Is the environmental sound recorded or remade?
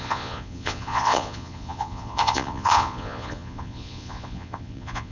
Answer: remade